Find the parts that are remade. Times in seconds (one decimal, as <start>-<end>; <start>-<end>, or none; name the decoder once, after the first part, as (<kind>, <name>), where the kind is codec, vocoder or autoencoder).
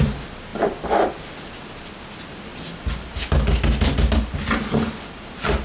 none